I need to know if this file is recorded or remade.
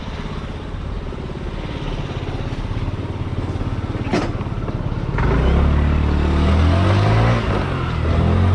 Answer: recorded